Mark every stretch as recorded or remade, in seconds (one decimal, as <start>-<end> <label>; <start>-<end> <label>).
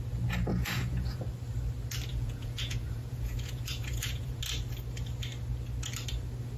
0.0-0.5 recorded; 0.5-1.2 remade; 1.2-2.1 recorded; 2.1-4.4 remade; 4.4-6.6 recorded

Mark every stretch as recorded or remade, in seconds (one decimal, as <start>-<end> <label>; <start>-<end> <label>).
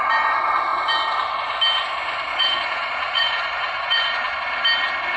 0.0-2.3 recorded; 2.3-4.3 remade; 4.3-5.2 recorded